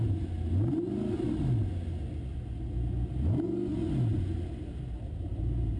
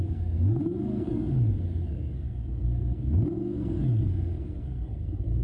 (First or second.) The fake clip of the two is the second